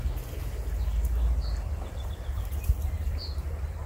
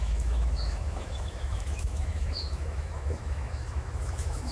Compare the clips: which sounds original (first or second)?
first